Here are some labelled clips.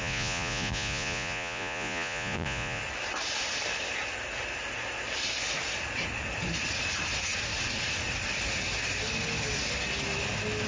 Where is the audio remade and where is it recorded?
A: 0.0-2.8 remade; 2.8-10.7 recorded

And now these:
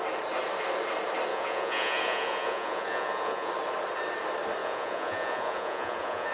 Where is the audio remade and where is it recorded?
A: 0.0-1.3 recorded; 1.3-3.5 remade; 3.5-4.6 recorded; 4.6-6.3 remade

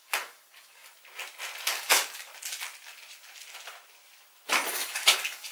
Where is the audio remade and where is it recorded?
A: 0.0-0.9 remade; 0.9-1.7 recorded; 1.7-2.3 remade; 2.3-4.7 recorded; 4.7-5.5 remade

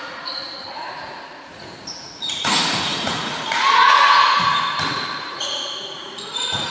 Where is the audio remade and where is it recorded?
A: 0.0-6.7 remade

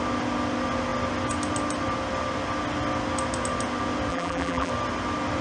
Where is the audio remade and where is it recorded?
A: 0.0-4.1 recorded; 4.1-4.7 remade; 4.7-5.4 recorded